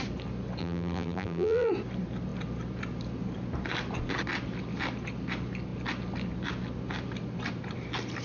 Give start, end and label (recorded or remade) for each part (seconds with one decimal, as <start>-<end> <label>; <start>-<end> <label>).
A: 0.0-0.6 recorded; 0.6-1.7 remade; 1.7-8.2 recorded